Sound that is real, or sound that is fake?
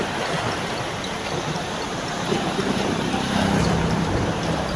fake